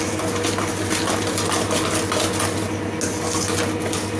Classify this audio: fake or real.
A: real